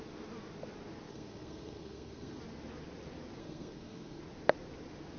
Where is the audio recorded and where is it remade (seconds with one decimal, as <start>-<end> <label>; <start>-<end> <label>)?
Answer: 0.0-1.1 recorded; 1.1-2.4 remade; 2.4-3.4 recorded; 3.4-4.2 remade; 4.2-5.2 recorded